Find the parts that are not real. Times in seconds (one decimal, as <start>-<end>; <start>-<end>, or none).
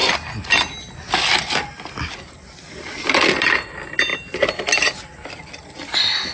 none